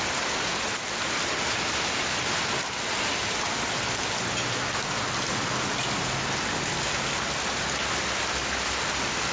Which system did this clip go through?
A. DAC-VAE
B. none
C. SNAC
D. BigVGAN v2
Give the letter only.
B